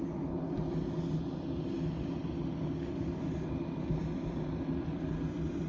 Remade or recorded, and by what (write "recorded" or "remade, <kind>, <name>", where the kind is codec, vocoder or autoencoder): recorded